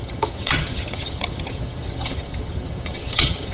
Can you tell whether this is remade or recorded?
remade